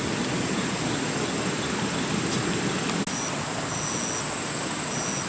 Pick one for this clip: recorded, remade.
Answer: recorded